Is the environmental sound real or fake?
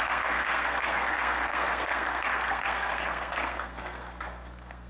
fake